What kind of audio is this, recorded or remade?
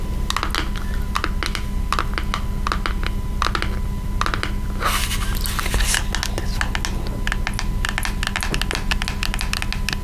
recorded